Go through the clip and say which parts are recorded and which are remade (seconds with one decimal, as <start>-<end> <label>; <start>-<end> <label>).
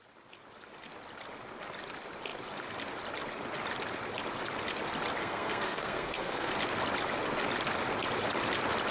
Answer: 0.0-5.2 recorded; 5.2-6.5 remade; 6.5-8.9 recorded